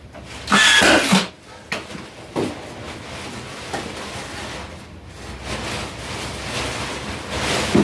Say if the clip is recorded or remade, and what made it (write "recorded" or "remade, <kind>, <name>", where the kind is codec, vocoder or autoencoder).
recorded